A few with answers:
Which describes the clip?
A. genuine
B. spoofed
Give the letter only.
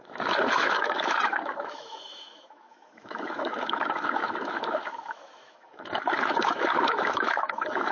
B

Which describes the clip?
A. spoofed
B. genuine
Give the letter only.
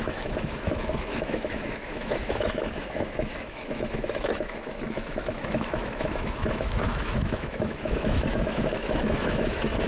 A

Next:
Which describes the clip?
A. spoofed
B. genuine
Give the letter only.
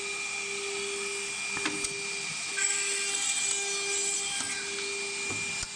B